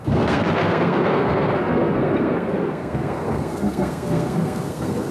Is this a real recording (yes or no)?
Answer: no